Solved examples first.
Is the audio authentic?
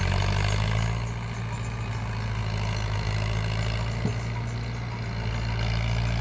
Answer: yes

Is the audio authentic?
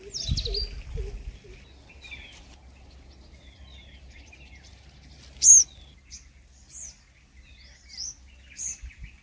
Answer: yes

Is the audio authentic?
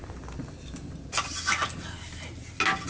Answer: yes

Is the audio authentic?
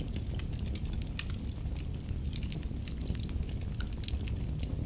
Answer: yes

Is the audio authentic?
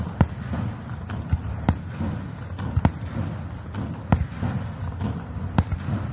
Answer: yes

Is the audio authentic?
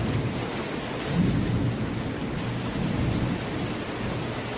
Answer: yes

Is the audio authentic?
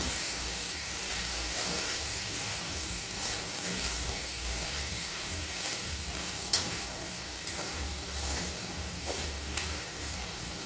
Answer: no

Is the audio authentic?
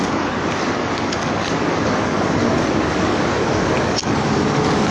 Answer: no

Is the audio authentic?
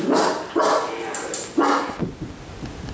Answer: yes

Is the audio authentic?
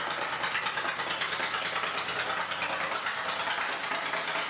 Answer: yes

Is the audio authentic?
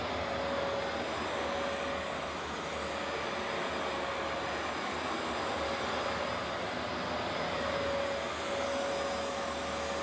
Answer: yes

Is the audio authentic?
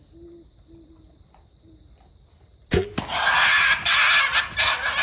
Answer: yes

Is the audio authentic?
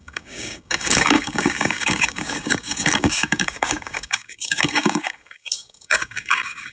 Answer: no